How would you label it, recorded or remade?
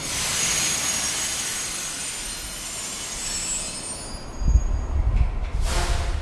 recorded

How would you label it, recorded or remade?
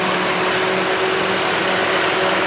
recorded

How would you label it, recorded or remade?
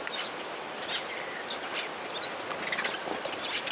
recorded